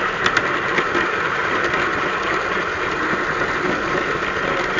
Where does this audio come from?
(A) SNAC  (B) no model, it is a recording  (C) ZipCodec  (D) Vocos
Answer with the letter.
B